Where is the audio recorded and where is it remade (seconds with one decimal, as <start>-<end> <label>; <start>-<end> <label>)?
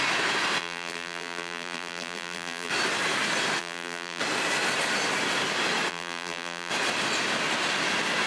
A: 0.0-0.6 recorded; 0.6-2.7 remade; 2.7-3.6 recorded; 3.6-4.2 remade; 4.2-5.9 recorded; 5.9-6.7 remade; 6.7-8.3 recorded